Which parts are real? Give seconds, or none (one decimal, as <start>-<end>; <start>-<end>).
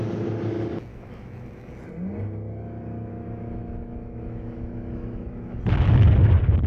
0.0-0.9; 1.7-3.1; 5.6-6.7